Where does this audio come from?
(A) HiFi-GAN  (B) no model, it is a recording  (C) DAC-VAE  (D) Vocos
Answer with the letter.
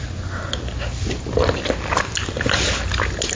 B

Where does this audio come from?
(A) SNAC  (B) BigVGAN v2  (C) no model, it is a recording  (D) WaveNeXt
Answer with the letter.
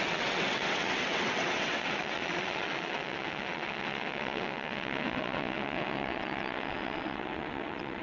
D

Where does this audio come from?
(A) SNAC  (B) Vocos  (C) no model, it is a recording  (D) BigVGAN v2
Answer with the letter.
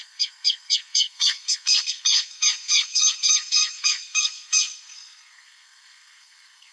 A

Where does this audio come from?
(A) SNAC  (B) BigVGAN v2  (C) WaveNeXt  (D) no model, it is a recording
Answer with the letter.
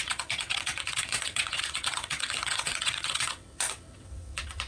C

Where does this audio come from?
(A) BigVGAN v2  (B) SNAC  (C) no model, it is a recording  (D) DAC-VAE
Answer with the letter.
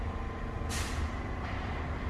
C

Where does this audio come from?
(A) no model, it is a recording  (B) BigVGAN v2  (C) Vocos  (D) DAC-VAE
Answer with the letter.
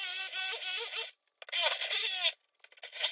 A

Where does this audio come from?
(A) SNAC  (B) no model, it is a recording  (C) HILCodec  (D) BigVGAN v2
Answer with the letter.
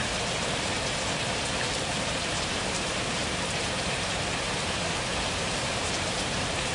D